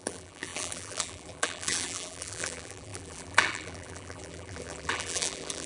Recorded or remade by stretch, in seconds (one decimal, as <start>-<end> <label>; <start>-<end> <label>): 0.0-5.7 remade